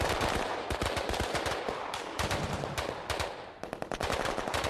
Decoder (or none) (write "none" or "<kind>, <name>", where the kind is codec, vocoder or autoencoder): none